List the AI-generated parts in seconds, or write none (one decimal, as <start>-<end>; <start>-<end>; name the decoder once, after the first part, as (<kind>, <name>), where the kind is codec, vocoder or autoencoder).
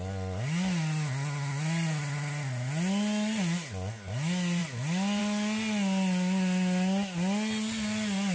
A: none